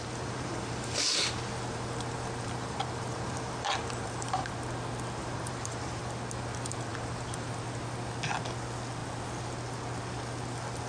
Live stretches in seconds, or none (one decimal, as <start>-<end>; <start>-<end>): 4.5-5.2; 6.0-6.9; 7.5-10.9